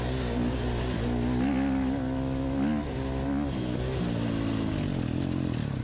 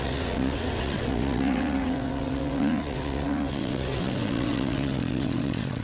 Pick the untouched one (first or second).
first